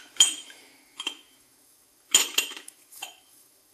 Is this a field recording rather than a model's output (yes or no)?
no